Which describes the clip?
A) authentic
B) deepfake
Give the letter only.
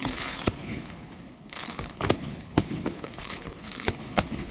B